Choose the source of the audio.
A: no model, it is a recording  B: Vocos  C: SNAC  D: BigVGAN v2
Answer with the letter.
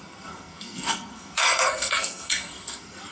C